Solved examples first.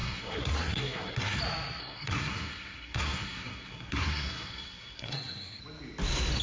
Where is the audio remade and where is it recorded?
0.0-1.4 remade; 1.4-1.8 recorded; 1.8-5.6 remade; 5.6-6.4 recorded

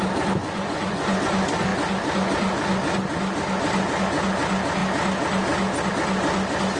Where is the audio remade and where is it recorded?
0.0-0.4 recorded; 0.4-1.2 remade; 1.2-6.8 recorded

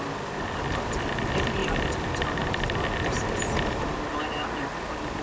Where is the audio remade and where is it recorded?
0.0-5.2 recorded